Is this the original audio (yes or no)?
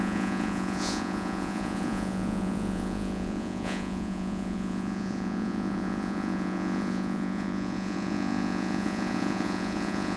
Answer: no